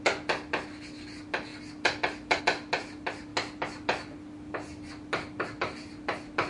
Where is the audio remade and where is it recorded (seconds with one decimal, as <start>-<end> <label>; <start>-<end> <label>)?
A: 0.0-6.5 recorded